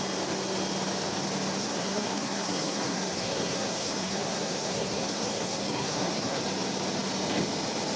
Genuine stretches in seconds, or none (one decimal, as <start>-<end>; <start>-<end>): 0.0-1.6; 6.4-8.0